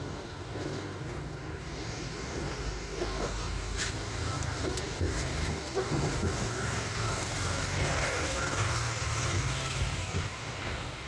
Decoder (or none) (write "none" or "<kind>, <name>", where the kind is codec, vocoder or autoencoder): codec, DAC